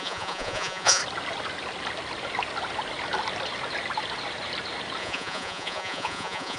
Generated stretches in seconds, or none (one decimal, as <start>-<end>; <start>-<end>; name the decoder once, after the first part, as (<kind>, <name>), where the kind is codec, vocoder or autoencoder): 0.0-1.0 (vocoder, Vocos); 5.0-6.6